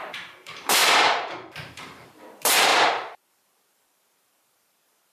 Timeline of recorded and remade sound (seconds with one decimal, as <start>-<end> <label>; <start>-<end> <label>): 0.0-5.1 remade